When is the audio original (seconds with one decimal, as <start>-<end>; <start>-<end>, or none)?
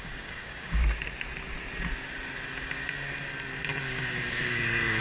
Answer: 0.8-3.8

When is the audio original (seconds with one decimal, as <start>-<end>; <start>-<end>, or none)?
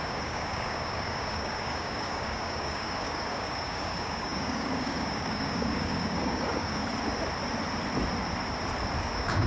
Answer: 6.8-9.0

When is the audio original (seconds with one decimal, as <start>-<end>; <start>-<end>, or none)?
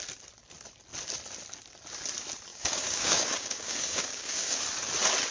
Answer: 0.0-2.5; 4.6-5.3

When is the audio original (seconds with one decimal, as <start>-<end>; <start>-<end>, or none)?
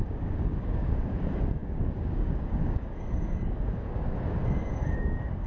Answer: none